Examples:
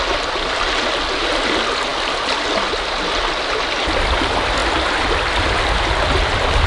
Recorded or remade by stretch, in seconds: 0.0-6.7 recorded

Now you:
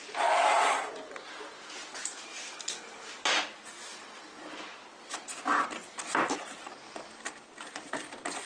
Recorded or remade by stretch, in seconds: 0.0-8.5 recorded

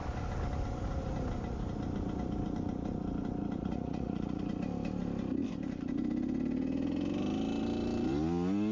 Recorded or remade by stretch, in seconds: 0.0-3.6 recorded; 3.6-4.4 remade; 4.4-8.7 recorded

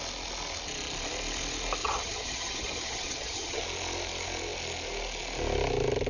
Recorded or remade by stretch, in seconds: 0.0-1.8 recorded; 1.8-3.6 remade; 3.6-6.1 recorded

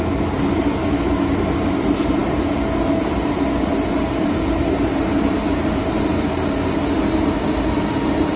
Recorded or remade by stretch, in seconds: 0.0-0.8 recorded; 0.8-1.4 remade; 1.4-8.4 recorded